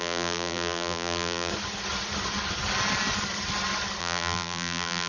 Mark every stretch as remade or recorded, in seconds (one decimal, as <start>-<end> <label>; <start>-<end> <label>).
0.0-1.5 remade; 1.5-4.0 recorded; 4.0-5.1 remade